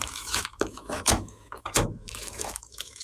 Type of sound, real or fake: fake